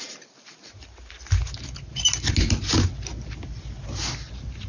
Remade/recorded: recorded